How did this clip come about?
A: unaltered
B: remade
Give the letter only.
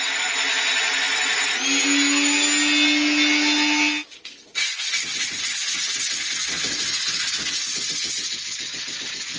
A